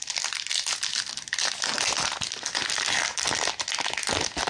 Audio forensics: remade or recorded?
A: recorded